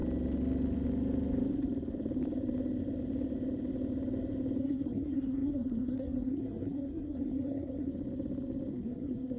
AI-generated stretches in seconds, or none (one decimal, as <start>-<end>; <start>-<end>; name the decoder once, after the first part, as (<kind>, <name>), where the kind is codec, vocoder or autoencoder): 4.6-7.9 (codec, SNAC); 8.7-9.4